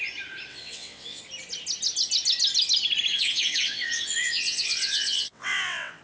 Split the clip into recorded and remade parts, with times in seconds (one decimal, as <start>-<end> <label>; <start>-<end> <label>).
0.0-0.5 recorded; 0.5-1.2 remade; 1.2-3.1 recorded; 3.1-6.0 remade